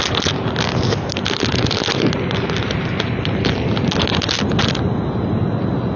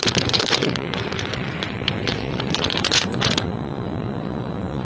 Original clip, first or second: first